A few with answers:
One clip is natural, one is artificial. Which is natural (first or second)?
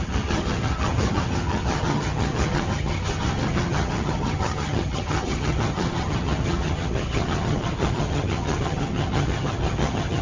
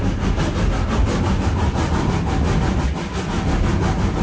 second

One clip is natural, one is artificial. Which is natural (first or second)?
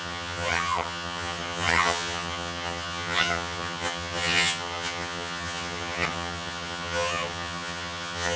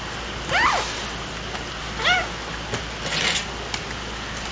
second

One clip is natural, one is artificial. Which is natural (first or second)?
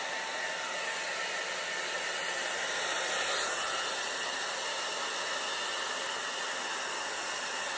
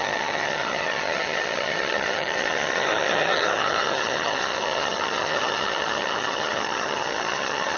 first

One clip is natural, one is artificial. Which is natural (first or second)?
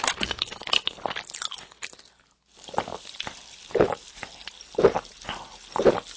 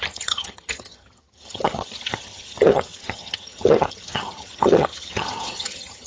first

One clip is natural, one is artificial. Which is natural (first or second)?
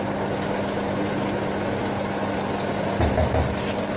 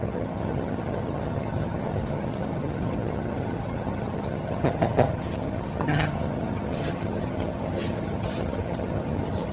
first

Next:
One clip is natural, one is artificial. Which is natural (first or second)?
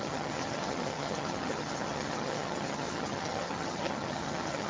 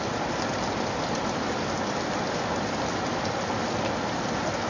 second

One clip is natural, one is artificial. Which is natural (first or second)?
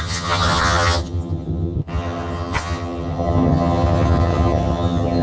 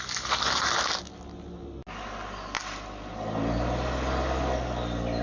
second